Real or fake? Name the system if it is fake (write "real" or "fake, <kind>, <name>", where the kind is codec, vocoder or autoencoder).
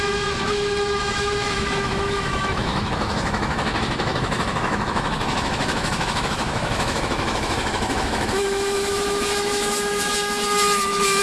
fake, autoencoder, DAC-VAE